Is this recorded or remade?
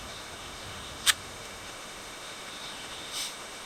remade